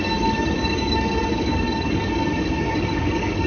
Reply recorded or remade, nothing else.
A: remade